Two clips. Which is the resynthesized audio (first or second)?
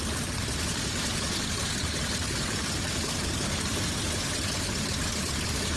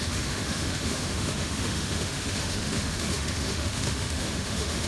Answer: second